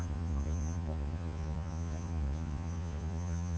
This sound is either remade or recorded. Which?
remade